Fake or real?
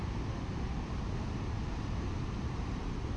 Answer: real